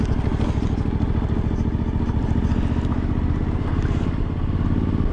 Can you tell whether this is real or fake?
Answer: real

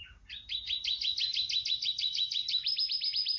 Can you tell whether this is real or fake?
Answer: real